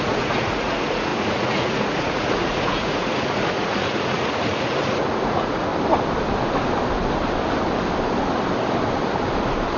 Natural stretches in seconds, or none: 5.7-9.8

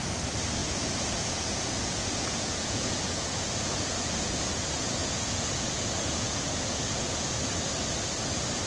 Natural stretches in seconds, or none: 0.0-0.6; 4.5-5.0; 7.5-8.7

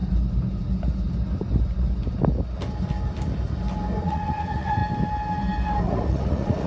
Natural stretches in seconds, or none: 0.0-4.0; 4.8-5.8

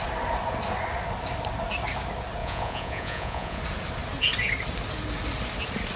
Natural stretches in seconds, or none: 0.0-2.4; 3.6-6.0

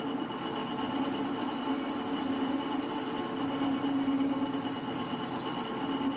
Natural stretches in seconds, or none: 0.0-6.2

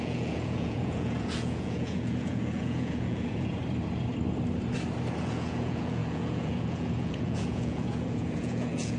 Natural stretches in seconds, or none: 3.6-5.2

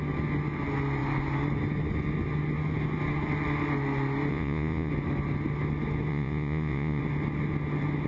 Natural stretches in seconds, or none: 0.0-4.3; 4.9-6.1; 7.0-8.1